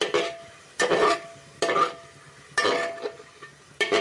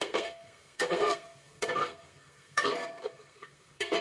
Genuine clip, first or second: first